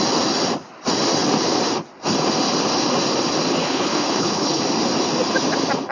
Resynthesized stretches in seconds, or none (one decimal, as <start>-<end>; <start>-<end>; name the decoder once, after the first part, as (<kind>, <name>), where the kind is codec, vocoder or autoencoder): 3.6-4.6 (codec, HILCodec)